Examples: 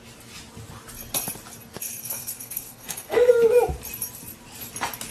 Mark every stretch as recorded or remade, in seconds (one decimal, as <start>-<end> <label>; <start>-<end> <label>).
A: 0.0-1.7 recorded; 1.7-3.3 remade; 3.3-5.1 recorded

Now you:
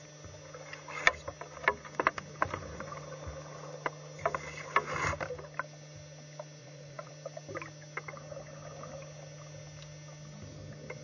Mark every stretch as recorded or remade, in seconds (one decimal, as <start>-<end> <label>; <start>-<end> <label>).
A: 0.0-6.6 recorded; 6.6-7.1 remade; 7.1-11.0 recorded

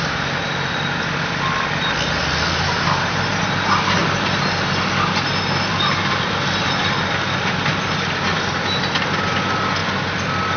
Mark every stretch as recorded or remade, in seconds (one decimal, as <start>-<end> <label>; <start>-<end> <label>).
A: 0.0-10.6 recorded